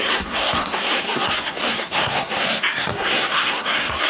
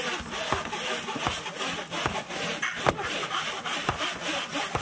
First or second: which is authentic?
second